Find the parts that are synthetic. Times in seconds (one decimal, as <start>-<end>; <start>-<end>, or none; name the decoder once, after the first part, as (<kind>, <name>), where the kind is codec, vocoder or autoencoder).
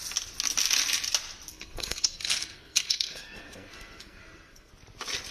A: 1.5-4.7 (codec, SNAC)